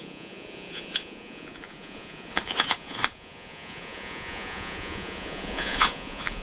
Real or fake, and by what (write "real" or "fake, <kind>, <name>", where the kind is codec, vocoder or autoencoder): fake, vocoder, Vocos